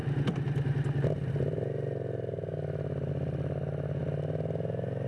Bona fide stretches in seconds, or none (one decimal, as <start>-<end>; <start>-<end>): 0.0-5.1